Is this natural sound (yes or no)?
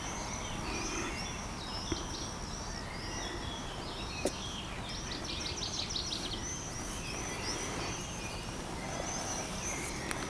yes